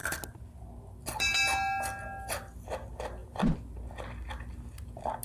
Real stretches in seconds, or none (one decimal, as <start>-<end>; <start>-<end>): 0.0-5.2